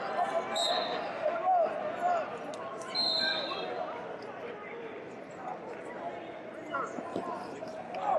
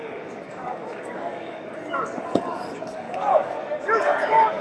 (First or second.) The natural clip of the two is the first